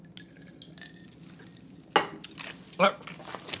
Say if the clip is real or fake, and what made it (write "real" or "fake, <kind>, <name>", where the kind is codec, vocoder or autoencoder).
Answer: real